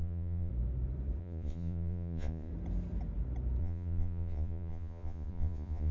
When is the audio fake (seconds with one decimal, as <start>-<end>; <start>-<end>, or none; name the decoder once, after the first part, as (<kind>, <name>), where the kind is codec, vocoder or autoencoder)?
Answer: 0.0-0.5 (vocoder, Vocos); 1.2-2.5; 3.6-5.9